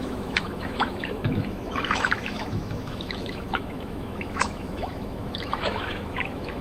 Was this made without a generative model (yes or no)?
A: no